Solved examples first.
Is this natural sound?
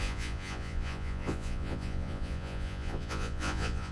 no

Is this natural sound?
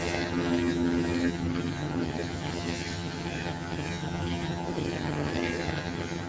no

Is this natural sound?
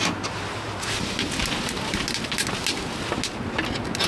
yes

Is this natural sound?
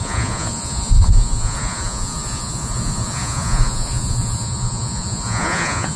no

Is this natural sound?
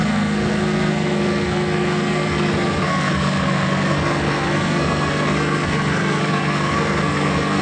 no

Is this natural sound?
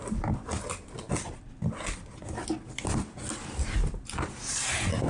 yes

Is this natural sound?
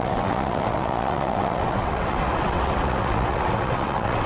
no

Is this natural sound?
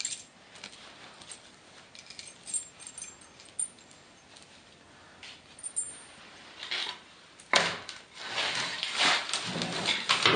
yes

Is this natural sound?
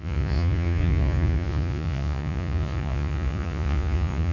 no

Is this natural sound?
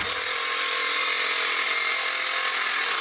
yes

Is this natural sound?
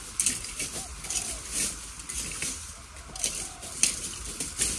yes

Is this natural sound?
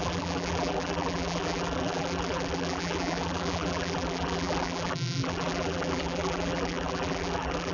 no